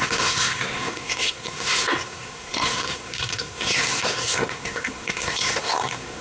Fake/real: fake